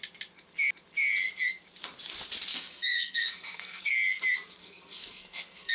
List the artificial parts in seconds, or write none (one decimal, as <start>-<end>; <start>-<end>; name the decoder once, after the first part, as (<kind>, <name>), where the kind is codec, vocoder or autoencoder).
2.5-3.9 (codec, SNAC); 4.6-5.7